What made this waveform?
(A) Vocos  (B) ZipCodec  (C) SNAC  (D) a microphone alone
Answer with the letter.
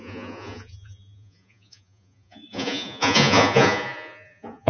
A